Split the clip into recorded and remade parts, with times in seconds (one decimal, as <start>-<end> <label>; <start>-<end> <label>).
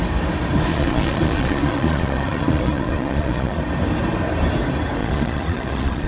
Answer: 0.0-0.7 recorded; 0.7-3.6 remade; 3.6-5.0 recorded; 5.0-6.1 remade